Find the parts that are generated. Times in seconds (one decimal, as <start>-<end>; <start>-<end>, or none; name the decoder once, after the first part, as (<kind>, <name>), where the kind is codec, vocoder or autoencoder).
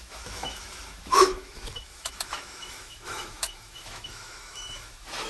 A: 0.0-5.3 (autoencoder, DAC-VAE)